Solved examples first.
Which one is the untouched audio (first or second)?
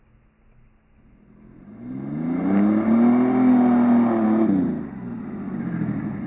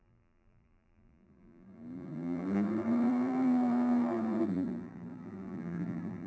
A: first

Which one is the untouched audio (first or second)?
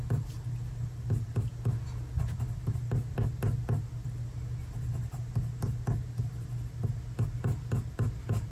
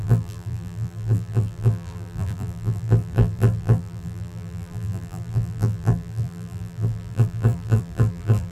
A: first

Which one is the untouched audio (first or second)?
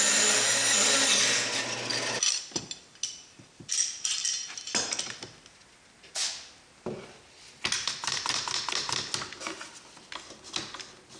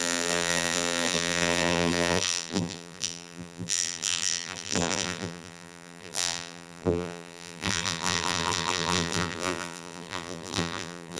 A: first